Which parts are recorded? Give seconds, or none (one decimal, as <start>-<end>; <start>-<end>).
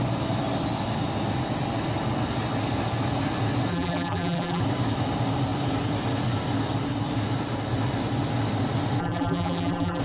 0.0-3.7; 4.6-9.0